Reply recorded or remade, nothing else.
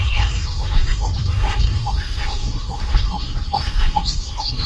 remade